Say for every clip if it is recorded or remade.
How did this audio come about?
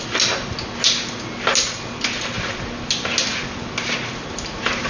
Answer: recorded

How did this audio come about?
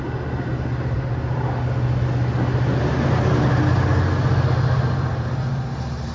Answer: recorded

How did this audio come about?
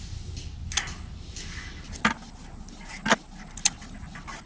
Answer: recorded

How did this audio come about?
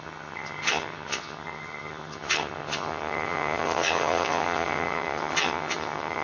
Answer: remade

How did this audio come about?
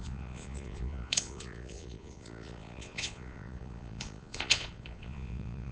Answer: remade